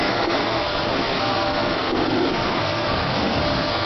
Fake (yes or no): yes